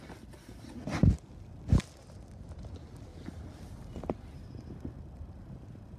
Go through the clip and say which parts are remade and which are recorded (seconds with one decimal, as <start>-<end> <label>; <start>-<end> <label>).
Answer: 0.0-1.0 remade; 1.0-1.8 recorded; 1.8-3.1 remade; 3.1-4.9 recorded; 4.9-6.0 remade